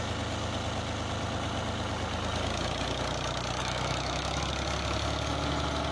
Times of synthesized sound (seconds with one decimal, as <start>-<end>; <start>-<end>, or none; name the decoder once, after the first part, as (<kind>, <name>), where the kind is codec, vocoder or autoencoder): 3.6-4.5 (autoencoder, DAC-VAE)